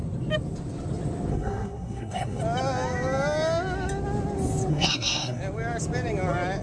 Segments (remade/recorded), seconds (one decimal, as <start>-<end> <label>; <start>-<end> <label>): 0.0-1.3 recorded; 1.3-2.4 remade; 2.4-4.7 recorded; 4.7-5.4 remade; 5.4-6.6 recorded